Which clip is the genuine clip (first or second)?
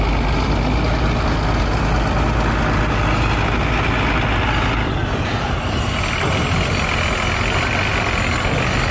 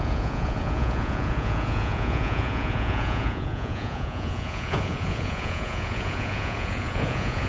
first